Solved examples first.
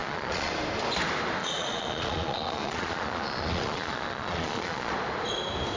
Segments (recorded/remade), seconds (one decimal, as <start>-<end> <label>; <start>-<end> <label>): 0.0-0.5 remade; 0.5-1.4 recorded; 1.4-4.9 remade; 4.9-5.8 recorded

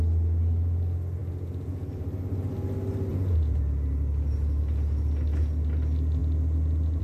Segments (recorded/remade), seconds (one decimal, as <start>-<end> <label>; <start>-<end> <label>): 0.0-1.2 recorded; 1.2-1.9 remade; 1.9-3.1 recorded; 3.1-3.6 remade; 3.6-7.0 recorded

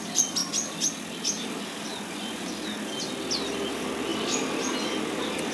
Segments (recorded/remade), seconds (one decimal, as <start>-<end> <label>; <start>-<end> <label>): 0.0-1.9 recorded; 1.9-2.5 remade; 2.5-5.5 recorded

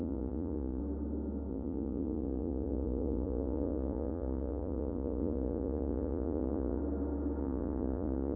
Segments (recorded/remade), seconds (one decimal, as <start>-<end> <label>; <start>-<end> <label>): 0.0-0.8 remade; 0.8-1.5 recorded; 1.5-6.8 remade; 6.8-7.4 recorded; 7.4-8.4 remade

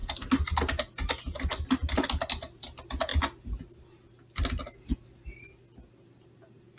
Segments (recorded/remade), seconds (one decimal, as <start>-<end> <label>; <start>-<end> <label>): 0.0-6.8 recorded

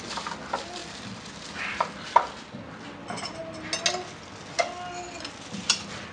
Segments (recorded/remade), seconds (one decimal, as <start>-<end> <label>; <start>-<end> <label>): 0.0-6.1 recorded

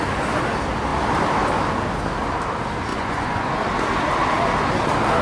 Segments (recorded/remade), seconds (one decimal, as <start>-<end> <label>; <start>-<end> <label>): 0.0-2.9 recorded; 2.9-3.5 remade; 3.5-5.2 recorded